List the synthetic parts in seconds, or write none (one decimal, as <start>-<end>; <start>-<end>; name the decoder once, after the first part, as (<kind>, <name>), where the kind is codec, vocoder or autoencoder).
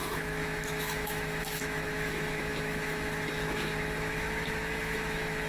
0.0-5.5 (autoencoder, DAC-VAE)